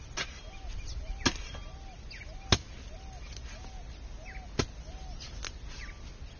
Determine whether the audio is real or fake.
real